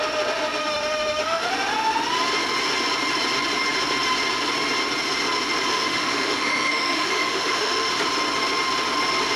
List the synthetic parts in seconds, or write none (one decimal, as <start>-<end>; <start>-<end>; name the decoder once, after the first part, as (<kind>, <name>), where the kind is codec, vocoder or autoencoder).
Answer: 0.6-1.5 (autoencoder, DAC-VAE); 5.7-7.9

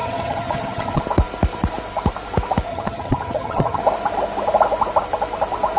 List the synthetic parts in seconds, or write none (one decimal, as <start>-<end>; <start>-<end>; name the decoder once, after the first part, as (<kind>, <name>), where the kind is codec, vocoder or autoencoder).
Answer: 0.0-1.0 (vocoder, HiFi-GAN); 2.7-3.8